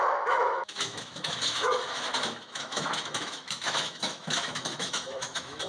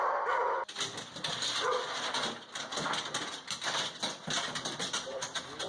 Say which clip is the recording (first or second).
second